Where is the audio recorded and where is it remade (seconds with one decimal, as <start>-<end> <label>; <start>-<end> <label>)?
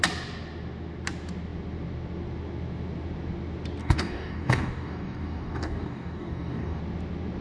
0.0-3.8 recorded; 3.8-6.8 remade; 6.8-7.4 recorded